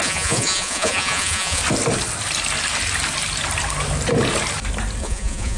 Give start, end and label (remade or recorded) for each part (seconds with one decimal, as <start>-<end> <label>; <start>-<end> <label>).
0.0-1.6 remade; 1.6-5.0 recorded; 5.0-5.6 remade